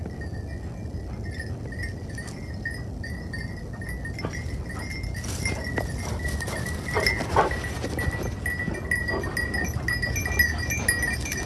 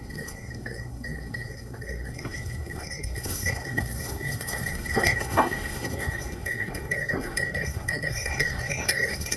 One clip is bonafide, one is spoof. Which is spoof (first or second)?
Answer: second